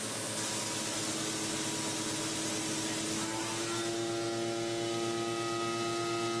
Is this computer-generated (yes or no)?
no